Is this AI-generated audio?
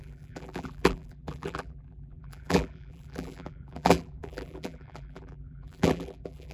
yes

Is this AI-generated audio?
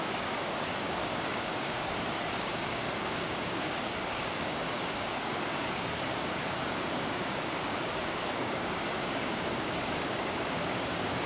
yes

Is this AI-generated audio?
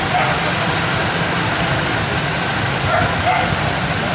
no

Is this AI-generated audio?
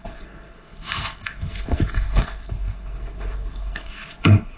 yes